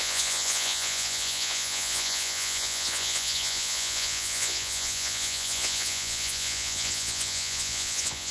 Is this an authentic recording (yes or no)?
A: no